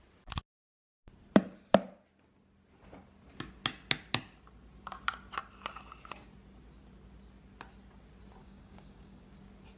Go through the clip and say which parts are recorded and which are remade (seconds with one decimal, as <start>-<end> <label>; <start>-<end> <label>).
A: 0.0-8.4 recorded; 8.4-9.2 remade; 9.2-9.8 recorded